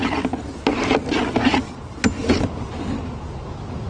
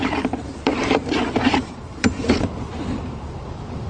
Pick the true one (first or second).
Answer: first